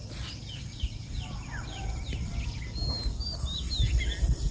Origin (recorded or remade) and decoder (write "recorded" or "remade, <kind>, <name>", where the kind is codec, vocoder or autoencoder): recorded